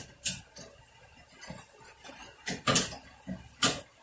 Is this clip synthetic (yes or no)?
no